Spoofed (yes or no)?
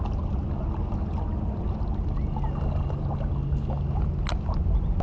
no